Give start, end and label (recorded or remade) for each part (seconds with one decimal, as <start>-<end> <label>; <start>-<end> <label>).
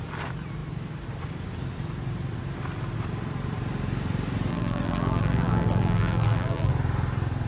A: 0.0-4.5 recorded; 4.5-6.7 remade; 6.7-7.5 recorded